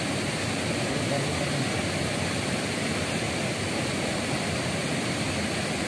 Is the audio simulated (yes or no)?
no